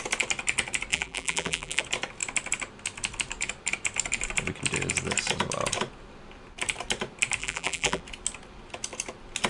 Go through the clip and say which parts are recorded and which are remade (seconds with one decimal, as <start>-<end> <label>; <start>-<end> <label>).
0.0-0.9 recorded; 0.9-1.8 remade; 1.8-7.4 recorded; 7.4-8.0 remade; 8.0-9.5 recorded